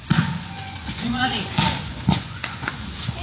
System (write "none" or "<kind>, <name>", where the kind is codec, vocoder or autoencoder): vocoder, Vocos